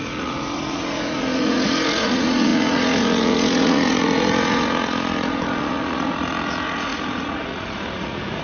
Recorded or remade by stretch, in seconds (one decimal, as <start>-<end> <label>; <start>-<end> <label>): 0.0-8.4 remade